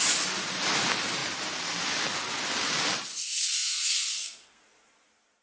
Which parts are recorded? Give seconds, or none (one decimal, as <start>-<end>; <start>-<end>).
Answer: 0.0-3.1; 4.6-5.4